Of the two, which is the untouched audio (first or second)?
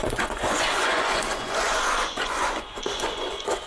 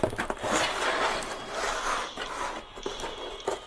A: second